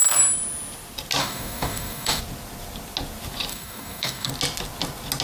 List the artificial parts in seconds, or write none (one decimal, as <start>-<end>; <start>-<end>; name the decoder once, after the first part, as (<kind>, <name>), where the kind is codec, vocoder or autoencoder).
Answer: 1.2-2.2 (codec, DAC); 3.5-4.3